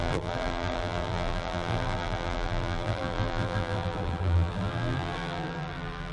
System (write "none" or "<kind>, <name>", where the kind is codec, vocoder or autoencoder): vocoder, BigVGAN v2